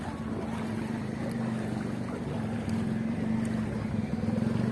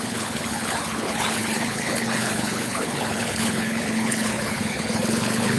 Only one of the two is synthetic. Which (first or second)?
second